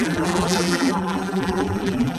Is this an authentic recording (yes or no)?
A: no